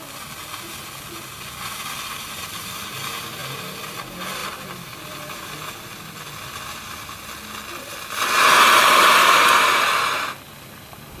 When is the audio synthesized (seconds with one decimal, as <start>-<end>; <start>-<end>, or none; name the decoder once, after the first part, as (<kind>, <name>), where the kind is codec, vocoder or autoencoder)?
none

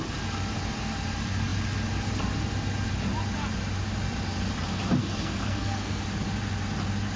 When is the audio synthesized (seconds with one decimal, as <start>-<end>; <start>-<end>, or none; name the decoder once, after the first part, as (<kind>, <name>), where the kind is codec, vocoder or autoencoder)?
5.0-6.0 (codec, SNAC)

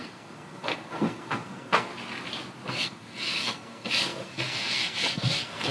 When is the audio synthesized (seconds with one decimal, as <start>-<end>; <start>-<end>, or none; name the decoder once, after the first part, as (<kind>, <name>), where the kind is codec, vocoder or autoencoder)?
0.0-1.9 (codec, SNAC); 2.7-5.7

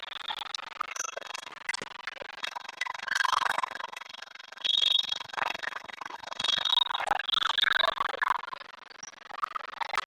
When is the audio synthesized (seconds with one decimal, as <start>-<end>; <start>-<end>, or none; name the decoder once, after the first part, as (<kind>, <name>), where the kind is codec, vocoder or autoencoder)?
0.9-1.5 (codec, SNAC); 2.4-6.7